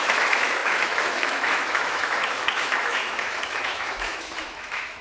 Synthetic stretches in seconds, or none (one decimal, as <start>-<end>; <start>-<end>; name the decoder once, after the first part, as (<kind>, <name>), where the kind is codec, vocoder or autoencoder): 0.0-5.0 (autoencoder, DAC-VAE)